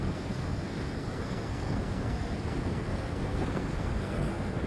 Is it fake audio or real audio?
fake